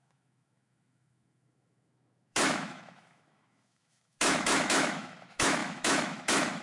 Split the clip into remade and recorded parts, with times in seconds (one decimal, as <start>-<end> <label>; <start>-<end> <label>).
0.0-6.6 remade